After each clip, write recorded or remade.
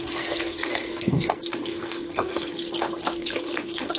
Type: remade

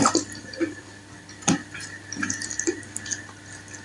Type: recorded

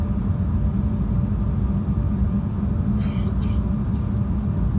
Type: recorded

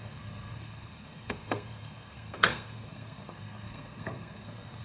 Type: remade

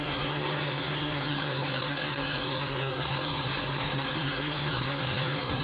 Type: remade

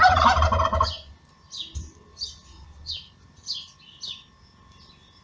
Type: recorded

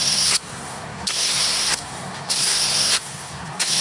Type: remade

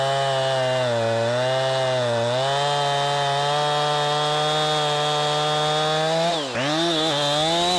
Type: recorded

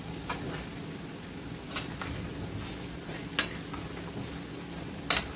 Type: recorded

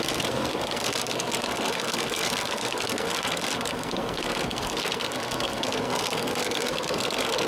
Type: remade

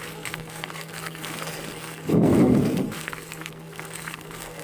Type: remade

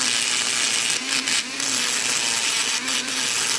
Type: recorded